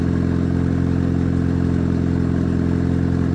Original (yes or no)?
yes